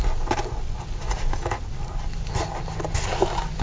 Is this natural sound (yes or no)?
yes